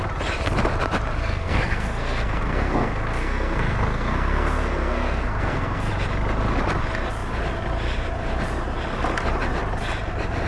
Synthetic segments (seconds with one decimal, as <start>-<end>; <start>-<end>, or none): 1.2-5.9